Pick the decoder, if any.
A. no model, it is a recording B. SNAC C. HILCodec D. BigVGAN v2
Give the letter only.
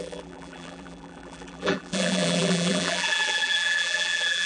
D